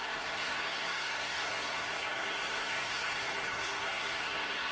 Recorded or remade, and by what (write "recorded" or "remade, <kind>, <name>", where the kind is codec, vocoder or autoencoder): remade, codec, SNAC